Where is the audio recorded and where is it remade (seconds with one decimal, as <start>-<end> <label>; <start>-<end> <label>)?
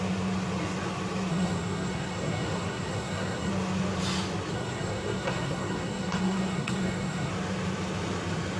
0.0-1.3 recorded; 1.3-3.5 remade; 3.5-4.5 recorded; 4.5-7.3 remade; 7.3-8.6 recorded